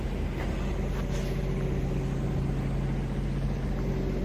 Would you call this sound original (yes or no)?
yes